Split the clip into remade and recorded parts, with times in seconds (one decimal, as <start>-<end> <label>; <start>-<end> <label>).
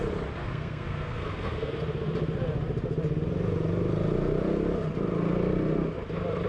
0.0-0.4 recorded; 0.4-1.8 remade; 1.8-6.5 recorded